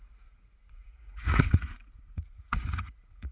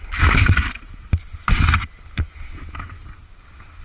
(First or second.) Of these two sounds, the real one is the second